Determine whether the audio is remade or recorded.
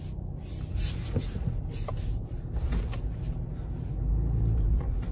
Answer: recorded